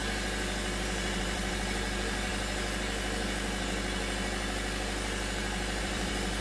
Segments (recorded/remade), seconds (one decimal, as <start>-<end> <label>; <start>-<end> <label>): 0.0-1.2 recorded; 1.2-2.3 remade; 2.3-5.8 recorded; 5.8-6.4 remade